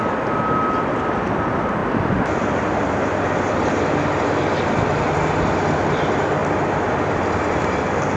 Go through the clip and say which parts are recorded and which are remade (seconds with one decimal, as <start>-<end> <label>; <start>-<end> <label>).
0.0-8.2 recorded